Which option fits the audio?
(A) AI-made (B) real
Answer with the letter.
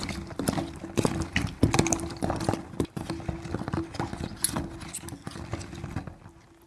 B